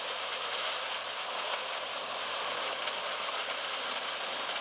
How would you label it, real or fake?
fake